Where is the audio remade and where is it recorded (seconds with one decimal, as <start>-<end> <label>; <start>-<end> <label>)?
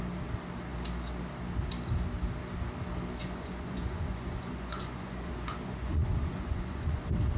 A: 0.0-3.2 recorded; 3.2-7.0 remade; 7.0-7.4 recorded